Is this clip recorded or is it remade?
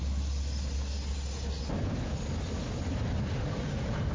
recorded